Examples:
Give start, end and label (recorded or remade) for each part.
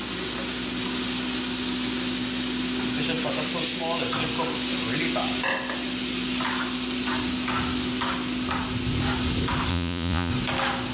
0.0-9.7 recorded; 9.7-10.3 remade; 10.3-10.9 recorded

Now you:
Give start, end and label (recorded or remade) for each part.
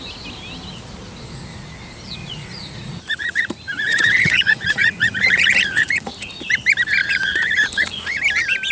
0.0-2.2 recorded; 2.2-6.1 remade; 6.1-7.0 recorded; 7.0-8.2 remade; 8.2-8.7 recorded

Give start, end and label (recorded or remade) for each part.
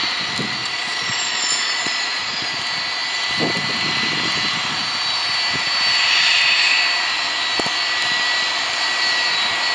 0.0-0.6 recorded; 0.6-2.6 remade; 2.6-9.7 recorded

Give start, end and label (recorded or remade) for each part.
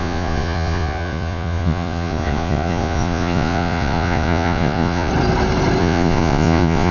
0.0-5.1 remade; 5.1-5.8 recorded; 5.8-6.9 remade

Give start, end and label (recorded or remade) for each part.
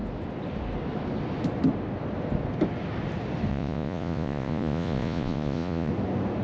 0.0-3.5 recorded; 3.5-5.9 remade; 5.9-6.4 recorded